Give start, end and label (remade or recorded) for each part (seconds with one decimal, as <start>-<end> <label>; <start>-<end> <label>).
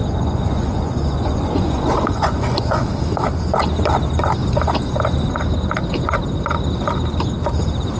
0.0-2.8 remade; 2.8-8.0 recorded